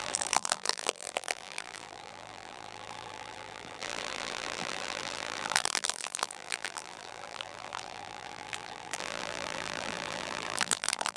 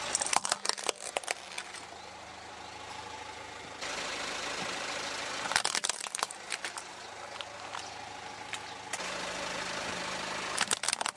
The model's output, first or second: first